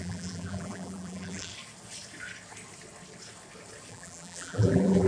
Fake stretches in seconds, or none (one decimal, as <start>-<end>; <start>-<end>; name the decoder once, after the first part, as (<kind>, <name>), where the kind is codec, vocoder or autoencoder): 0.0-1.5 (vocoder, BigVGAN v2); 3.9-5.1